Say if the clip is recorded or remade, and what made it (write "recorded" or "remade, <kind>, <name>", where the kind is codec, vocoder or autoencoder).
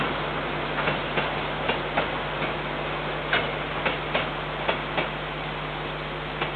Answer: recorded